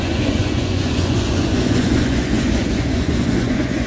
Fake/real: fake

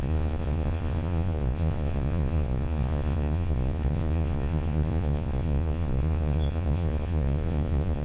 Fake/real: fake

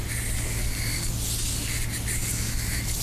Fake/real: real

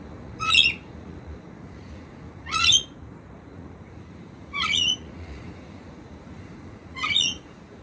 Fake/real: fake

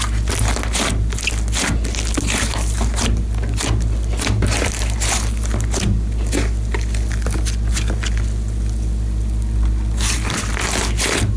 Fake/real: real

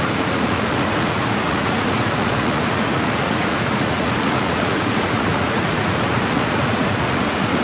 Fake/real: fake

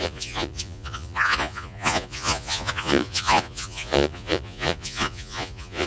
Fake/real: fake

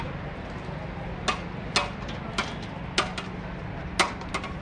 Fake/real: real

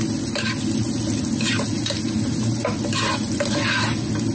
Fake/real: real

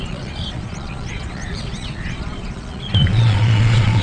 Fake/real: fake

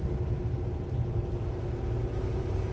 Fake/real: real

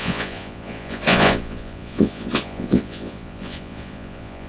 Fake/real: fake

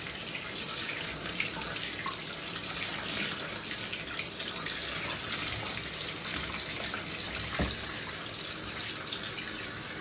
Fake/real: real